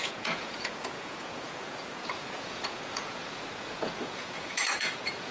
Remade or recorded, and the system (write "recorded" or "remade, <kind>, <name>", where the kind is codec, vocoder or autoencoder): remade, vocoder, Vocos